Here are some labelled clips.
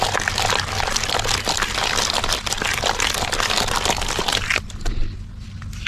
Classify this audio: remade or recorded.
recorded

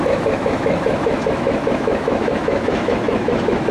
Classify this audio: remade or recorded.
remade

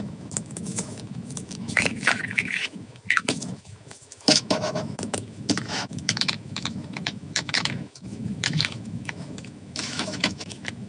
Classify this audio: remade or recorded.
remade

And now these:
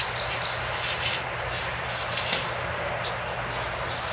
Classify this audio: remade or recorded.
recorded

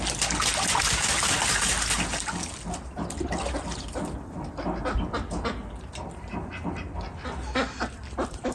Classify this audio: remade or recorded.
recorded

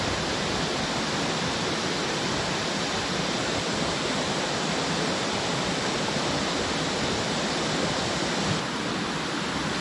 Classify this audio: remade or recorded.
recorded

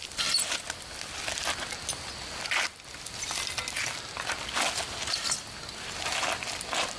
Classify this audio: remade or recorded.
recorded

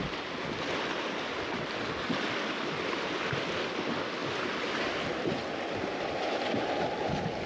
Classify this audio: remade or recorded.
recorded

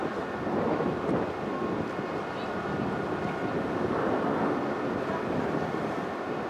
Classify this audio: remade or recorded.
recorded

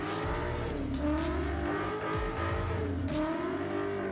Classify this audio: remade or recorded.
recorded